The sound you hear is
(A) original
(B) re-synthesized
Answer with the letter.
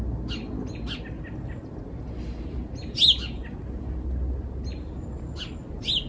A